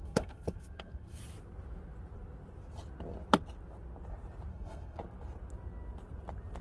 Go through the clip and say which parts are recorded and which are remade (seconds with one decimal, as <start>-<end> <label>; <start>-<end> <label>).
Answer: 0.0-1.2 remade; 1.2-4.5 recorded; 4.5-5.0 remade; 5.0-6.6 recorded